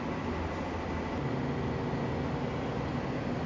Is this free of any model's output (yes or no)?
yes